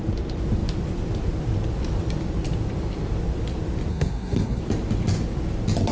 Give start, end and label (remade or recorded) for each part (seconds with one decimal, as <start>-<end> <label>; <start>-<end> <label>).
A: 0.0-3.9 recorded; 3.9-4.6 remade; 4.6-5.9 recorded